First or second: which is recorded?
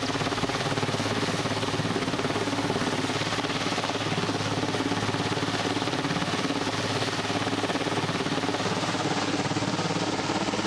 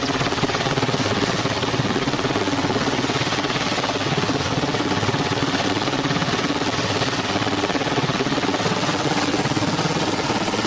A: first